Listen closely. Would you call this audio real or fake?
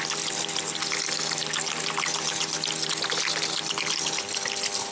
real